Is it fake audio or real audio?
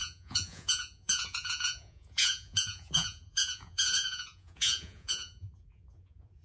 fake